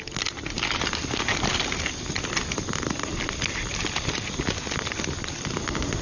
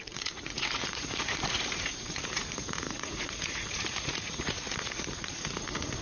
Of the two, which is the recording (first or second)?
first